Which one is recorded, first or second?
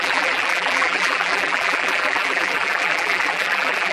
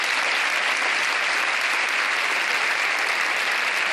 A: second